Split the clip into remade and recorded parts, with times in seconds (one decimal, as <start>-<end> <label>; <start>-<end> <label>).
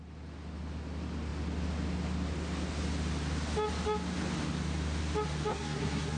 0.0-5.5 recorded; 5.5-6.2 remade